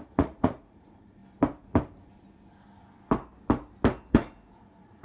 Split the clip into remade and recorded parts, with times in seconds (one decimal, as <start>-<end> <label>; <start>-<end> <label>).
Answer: 0.0-1.2 remade; 1.2-4.1 recorded; 4.1-5.0 remade